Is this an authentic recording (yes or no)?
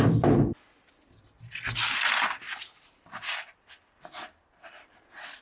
yes